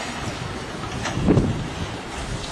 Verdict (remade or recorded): recorded